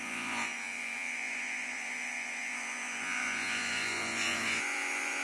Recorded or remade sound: remade